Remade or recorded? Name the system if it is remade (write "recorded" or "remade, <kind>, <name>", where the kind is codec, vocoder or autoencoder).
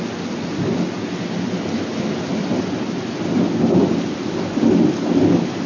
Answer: recorded